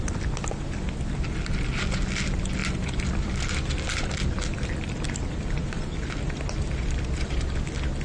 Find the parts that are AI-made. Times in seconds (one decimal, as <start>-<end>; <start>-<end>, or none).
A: 2.6-7.4